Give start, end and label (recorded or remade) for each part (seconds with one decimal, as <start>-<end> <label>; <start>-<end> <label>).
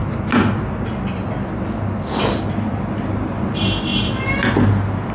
0.0-5.1 recorded